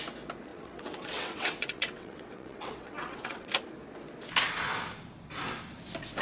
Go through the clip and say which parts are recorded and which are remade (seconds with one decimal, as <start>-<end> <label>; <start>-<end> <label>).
0.0-0.5 recorded; 0.5-3.5 remade; 3.5-6.2 recorded